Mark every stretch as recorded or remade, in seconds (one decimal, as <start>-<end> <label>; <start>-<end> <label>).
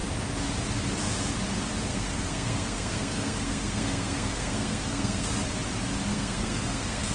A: 0.0-1.9 recorded; 1.9-5.3 remade; 5.3-6.1 recorded; 6.1-7.1 remade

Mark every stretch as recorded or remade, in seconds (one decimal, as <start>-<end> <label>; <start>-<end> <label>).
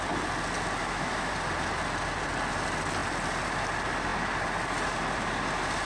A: 0.0-0.8 recorded; 0.8-1.3 remade; 1.3-5.8 recorded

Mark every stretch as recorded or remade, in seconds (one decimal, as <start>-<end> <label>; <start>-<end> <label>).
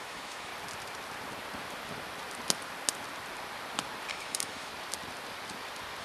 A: 0.0-0.5 remade; 0.5-4.1 recorded; 4.1-4.7 remade; 4.7-6.0 recorded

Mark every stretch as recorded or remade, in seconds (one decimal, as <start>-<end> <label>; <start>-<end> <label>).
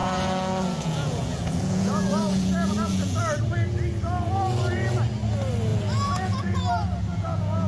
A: 0.0-3.2 remade; 3.2-5.7 recorded; 5.7-6.6 remade; 6.6-7.1 recorded; 7.1-7.7 remade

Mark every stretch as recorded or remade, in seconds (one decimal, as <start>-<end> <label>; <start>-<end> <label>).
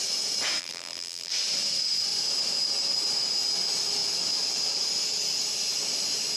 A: 0.0-0.6 recorded; 0.6-1.3 remade; 1.3-6.4 recorded